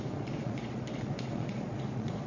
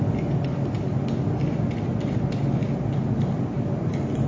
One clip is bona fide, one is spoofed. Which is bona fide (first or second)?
second